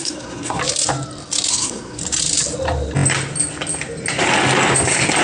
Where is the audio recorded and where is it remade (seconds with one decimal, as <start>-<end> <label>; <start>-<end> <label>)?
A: 0.0-0.6 remade; 0.6-1.5 recorded; 1.5-2.0 remade; 2.0-5.2 recorded